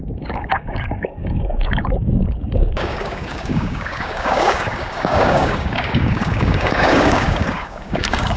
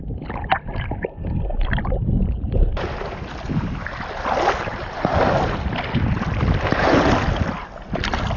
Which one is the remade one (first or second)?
first